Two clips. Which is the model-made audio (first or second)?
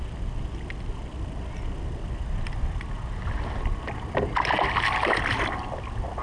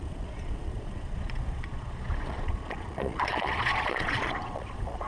second